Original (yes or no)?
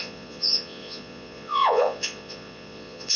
no